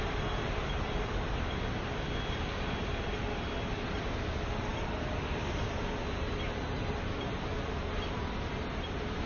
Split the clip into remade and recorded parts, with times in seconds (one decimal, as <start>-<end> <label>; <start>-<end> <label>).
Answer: 0.0-9.3 recorded